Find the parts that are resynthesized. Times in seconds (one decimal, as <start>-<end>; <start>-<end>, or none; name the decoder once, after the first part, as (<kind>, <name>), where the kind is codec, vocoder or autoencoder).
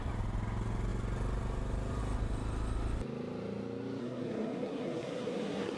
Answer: 4.0-5.8 (codec, SNAC)